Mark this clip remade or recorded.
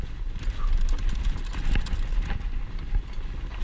recorded